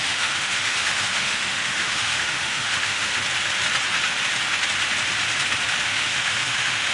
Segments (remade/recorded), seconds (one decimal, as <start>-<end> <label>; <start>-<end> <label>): 0.0-3.1 remade; 3.1-5.8 recorded; 5.8-6.9 remade